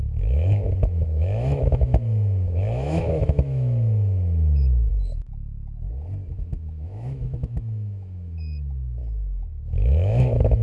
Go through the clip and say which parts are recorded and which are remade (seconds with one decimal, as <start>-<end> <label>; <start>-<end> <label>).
0.0-4.9 remade; 4.9-6.3 recorded; 6.3-10.6 remade